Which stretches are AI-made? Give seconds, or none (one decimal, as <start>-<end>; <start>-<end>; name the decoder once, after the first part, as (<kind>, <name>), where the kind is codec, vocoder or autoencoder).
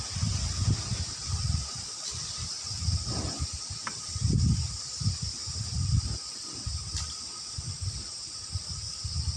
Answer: none